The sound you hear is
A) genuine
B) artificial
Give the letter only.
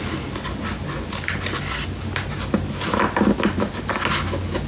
A